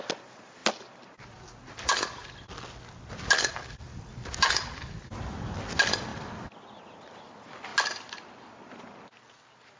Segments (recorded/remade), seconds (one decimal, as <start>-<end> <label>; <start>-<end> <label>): 0.0-0.6 recorded; 0.6-1.7 remade; 1.7-6.1 recorded; 6.1-7.1 remade; 7.1-9.8 recorded